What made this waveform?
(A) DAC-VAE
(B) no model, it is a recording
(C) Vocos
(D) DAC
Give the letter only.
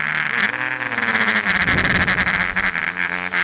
B